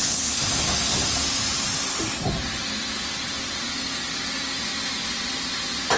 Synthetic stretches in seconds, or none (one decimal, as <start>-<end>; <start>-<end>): none